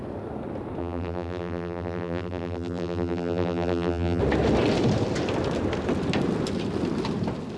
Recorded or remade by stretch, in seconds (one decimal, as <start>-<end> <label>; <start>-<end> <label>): 0.0-0.8 recorded; 0.8-4.2 remade; 4.2-7.6 recorded